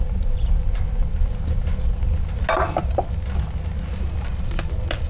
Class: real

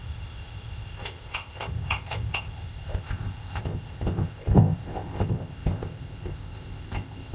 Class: fake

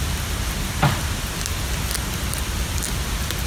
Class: real